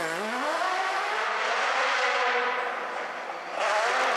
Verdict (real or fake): real